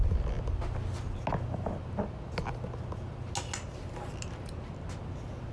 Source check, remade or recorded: recorded